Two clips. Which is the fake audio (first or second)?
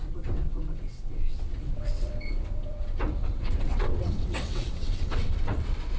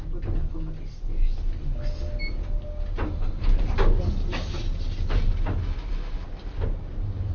first